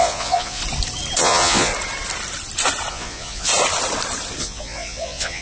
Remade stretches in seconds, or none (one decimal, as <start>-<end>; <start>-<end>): 0.0-0.6; 1.2-1.7; 2.9-3.5; 4.4-5.4